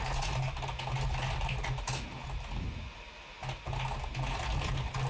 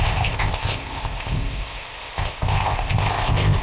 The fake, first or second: second